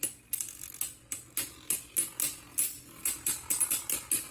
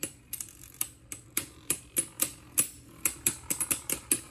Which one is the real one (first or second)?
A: first